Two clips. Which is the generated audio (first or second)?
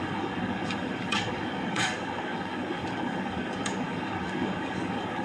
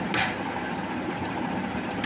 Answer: first